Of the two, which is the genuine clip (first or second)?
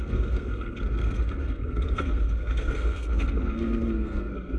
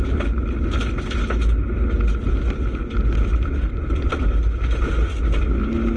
second